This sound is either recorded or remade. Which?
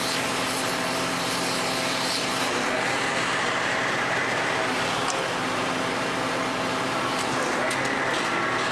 recorded